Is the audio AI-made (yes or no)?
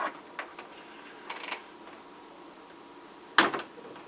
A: no